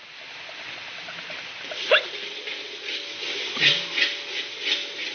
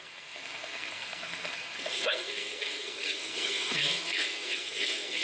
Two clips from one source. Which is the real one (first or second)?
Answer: first